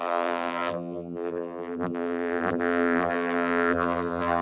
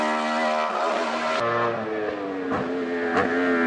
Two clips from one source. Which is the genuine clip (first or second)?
second